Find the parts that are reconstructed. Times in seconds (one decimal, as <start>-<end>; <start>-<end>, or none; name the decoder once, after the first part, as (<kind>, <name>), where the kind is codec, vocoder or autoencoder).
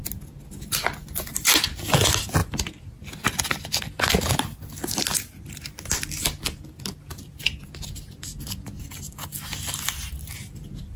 none